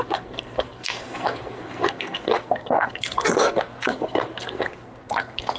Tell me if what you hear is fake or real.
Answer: fake